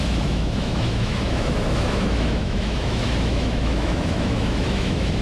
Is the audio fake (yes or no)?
yes